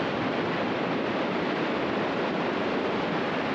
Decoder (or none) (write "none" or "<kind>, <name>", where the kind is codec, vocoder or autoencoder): none